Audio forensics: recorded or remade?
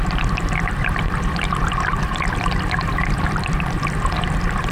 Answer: recorded